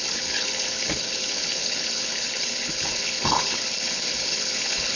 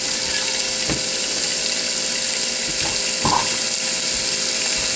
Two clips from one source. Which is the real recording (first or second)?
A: second